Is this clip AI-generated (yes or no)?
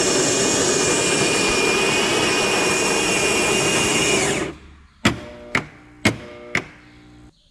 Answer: no